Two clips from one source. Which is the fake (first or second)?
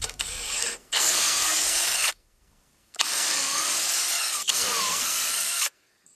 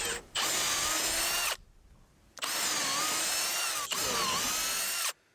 first